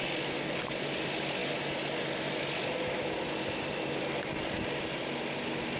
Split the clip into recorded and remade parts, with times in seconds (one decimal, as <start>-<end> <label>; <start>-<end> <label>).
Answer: 0.0-5.8 recorded